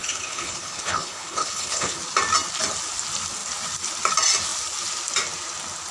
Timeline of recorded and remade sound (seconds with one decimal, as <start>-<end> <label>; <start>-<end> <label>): 0.0-2.0 remade; 2.0-5.9 recorded